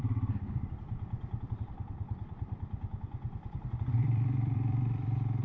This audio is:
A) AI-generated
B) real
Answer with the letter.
A